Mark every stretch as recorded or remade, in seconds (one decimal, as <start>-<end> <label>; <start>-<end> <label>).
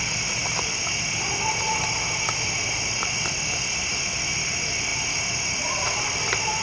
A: 0.0-6.6 recorded